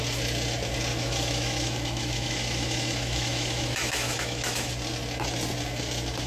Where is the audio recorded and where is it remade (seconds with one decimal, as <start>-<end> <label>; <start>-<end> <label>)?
0.0-0.9 recorded; 0.9-4.7 remade; 4.7-6.3 recorded